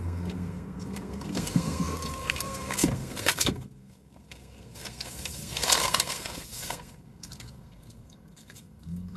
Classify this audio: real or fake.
fake